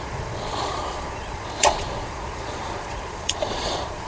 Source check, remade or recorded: remade